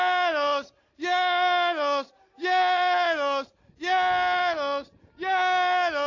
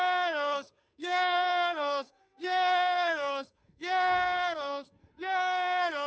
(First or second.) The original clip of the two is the first